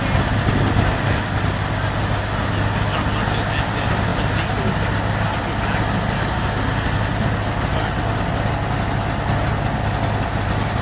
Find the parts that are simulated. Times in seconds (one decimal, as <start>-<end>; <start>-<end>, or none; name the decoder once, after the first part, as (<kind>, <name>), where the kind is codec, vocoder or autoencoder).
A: none